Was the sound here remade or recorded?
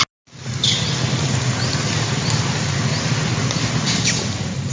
recorded